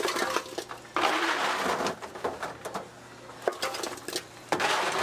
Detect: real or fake real